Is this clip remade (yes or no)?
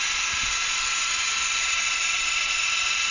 no